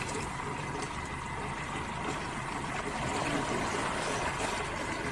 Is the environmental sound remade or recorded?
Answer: remade